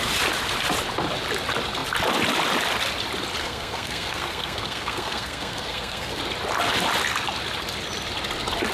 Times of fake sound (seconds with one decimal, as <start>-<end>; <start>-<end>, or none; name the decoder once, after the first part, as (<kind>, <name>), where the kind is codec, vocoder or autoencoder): 3.4-6.2 (codec, SNAC)